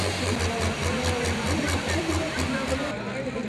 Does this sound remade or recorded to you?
recorded